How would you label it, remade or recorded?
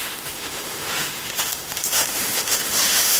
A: remade